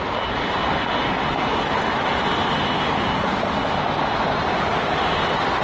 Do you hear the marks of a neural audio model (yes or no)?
no